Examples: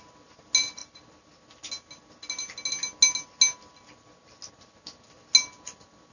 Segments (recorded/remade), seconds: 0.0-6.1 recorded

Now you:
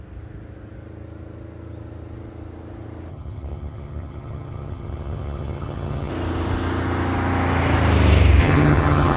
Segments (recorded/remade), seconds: 0.0-3.1 recorded; 3.1-6.1 remade; 6.1-8.4 recorded; 8.4-9.2 remade

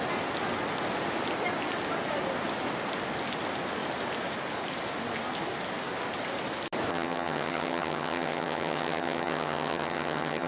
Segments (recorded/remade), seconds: 0.0-6.9 recorded; 6.9-10.5 remade

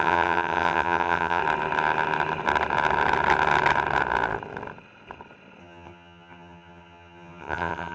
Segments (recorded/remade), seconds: 0.0-1.4 remade; 1.4-5.6 recorded; 5.6-7.9 remade

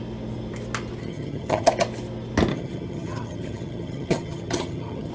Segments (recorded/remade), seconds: 0.0-1.0 recorded; 1.0-1.7 remade; 1.7-2.5 recorded; 2.5-5.1 remade

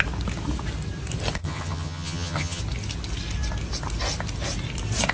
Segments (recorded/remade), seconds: 0.0-1.4 recorded; 1.4-2.6 remade; 2.6-5.1 recorded

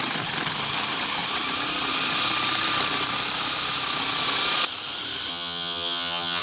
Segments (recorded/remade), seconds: 0.0-5.3 recorded; 5.3-6.4 remade